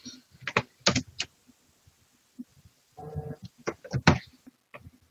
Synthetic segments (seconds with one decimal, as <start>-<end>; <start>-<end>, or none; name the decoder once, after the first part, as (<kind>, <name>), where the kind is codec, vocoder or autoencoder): 2.5-3.9 (vocoder, BigVGAN v2)